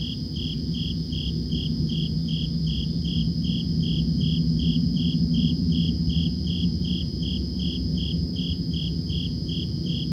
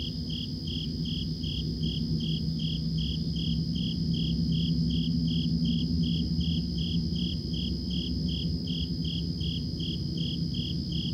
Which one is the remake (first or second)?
first